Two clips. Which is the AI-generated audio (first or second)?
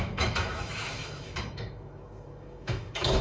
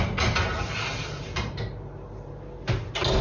first